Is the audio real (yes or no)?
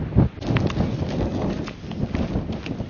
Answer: yes